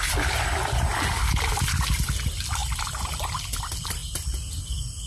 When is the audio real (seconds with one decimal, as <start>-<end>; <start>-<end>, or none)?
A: 0.0-5.1